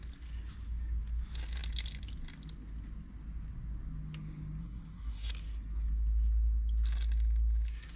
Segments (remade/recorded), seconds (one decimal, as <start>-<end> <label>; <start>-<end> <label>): 0.0-4.6 recorded; 4.6-5.3 remade; 5.3-8.0 recorded